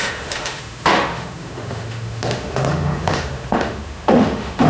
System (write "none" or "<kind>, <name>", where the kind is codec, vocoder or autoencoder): autoencoder, DAC-VAE